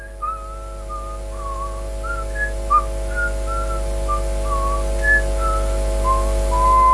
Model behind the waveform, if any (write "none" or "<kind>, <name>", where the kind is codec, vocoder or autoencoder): none